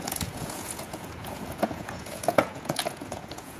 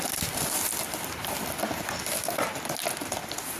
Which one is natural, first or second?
second